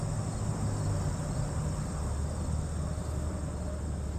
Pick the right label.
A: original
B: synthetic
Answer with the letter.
A